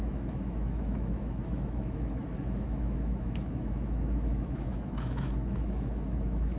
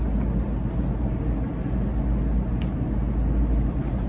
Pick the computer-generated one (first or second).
first